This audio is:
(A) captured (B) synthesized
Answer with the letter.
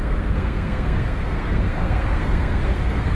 B